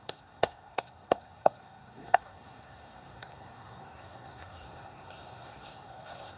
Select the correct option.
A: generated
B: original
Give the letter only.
A